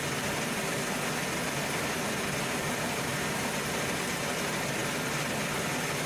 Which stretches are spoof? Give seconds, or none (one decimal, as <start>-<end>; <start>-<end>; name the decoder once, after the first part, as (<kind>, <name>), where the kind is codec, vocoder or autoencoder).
none